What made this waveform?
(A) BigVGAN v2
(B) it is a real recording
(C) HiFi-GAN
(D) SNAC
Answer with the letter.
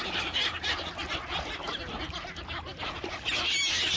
B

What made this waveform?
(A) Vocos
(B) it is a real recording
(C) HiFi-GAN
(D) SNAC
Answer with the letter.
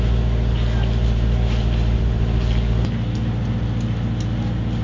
B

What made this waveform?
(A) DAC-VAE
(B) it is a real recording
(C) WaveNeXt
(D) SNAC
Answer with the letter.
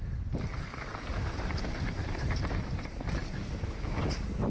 B